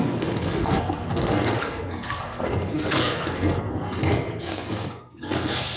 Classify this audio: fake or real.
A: fake